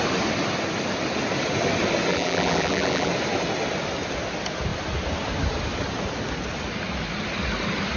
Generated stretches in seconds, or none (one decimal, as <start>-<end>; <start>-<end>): 2.1-3.1